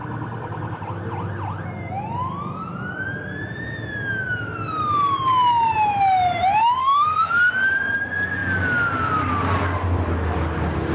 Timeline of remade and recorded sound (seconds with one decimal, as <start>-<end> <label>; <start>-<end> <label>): 0.0-6.8 recorded; 6.8-7.5 remade; 7.5-10.9 recorded